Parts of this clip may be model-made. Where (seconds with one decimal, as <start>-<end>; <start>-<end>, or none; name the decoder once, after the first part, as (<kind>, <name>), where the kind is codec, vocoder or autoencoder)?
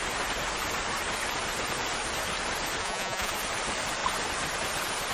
2.8-3.3 (vocoder, Vocos)